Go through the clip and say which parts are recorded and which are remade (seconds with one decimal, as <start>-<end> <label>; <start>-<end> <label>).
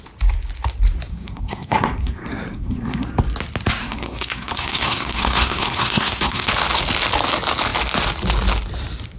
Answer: 0.0-1.1 recorded; 1.1-3.1 remade; 3.1-3.8 recorded; 3.8-6.5 remade; 6.5-9.2 recorded